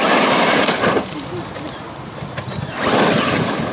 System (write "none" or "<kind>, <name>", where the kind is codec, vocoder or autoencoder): none